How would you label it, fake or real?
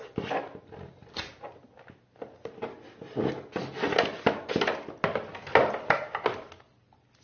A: real